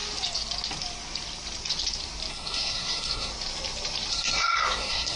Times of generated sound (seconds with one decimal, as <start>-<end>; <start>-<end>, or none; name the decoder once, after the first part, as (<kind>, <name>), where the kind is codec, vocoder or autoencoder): 2.3-3.3 (codec, SNAC); 4.1-5.2